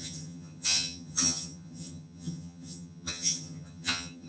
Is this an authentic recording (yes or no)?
no